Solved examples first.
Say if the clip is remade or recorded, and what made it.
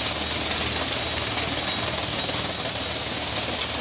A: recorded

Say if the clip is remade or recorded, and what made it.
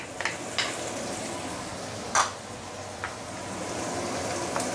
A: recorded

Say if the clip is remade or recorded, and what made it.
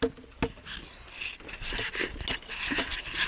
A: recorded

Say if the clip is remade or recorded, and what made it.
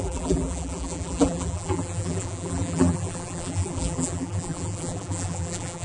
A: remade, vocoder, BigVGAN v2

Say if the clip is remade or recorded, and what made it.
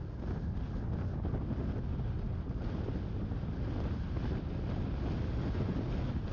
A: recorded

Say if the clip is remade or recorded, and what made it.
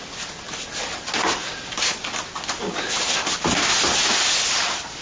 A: recorded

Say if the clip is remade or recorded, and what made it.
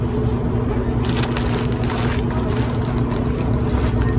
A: recorded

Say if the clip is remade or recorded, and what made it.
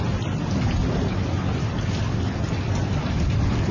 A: remade, vocoder, BigVGAN v2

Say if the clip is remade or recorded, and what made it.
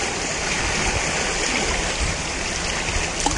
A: recorded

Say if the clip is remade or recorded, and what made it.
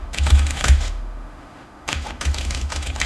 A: remade, autoencoder, DAC-VAE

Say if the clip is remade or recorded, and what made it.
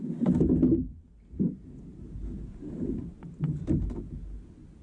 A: recorded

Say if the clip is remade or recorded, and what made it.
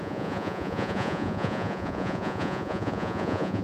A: remade, vocoder, Vocos